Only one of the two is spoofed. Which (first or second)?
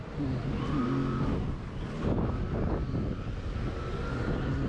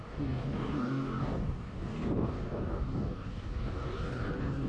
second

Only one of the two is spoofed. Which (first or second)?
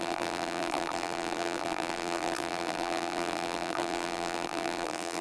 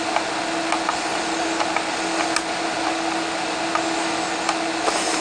first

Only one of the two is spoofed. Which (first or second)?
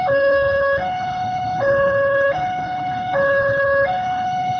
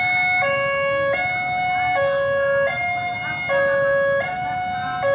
first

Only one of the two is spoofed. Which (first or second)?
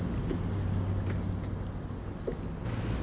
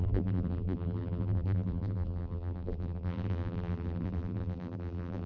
second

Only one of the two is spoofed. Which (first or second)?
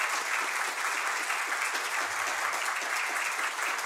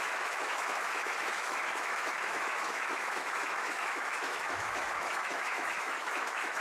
second